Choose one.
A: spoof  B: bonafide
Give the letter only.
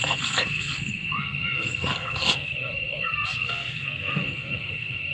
A